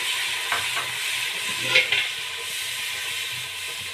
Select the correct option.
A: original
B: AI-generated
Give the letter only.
A